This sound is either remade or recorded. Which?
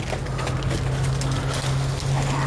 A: recorded